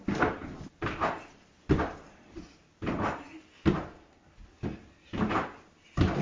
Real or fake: real